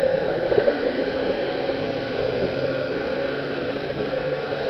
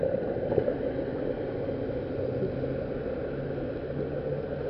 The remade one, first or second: first